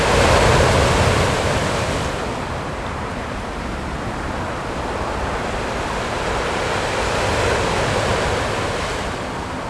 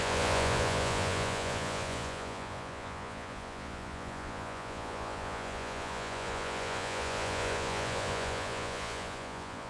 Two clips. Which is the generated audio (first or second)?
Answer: second